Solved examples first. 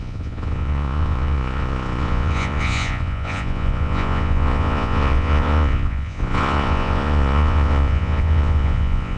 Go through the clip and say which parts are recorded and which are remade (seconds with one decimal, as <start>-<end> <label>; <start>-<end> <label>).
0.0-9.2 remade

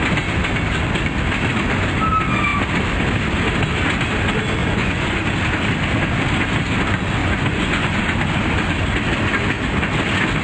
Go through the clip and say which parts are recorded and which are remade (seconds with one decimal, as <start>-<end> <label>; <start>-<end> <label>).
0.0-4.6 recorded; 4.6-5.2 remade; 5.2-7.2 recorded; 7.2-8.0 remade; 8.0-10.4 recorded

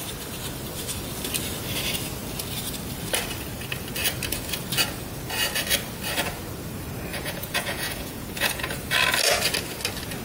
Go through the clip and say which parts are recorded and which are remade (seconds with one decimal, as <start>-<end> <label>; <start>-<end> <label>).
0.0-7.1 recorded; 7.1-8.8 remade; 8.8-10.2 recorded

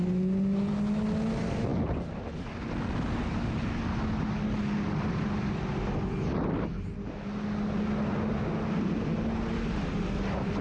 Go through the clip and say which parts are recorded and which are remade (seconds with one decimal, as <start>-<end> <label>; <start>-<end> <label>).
0.0-10.6 recorded

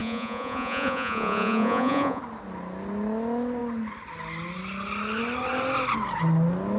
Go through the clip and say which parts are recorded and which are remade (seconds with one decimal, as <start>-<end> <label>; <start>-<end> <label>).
0.0-2.2 remade; 2.2-6.8 recorded

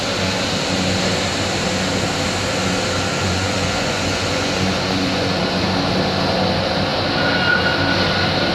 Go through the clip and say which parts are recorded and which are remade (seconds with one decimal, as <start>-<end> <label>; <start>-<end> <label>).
0.0-3.1 recorded; 3.1-5.4 remade; 5.4-8.5 recorded